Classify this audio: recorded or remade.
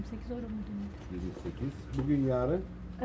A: recorded